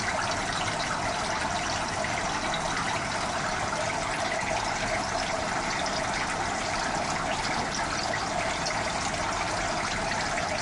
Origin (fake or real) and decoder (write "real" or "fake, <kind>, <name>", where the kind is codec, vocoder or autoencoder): real